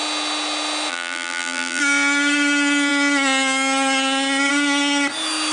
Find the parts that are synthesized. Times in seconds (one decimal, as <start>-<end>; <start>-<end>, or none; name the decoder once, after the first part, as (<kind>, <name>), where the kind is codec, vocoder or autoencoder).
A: 0.9-1.8 (vocoder, BigVGAN v2)